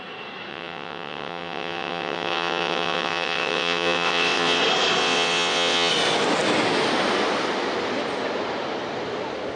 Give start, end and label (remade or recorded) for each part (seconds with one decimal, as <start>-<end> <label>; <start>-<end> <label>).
0.0-0.5 recorded; 0.5-4.6 remade; 4.6-5.0 recorded; 5.0-5.9 remade; 5.9-9.6 recorded